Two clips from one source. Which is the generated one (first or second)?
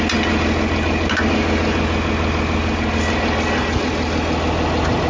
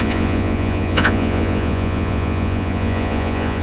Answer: second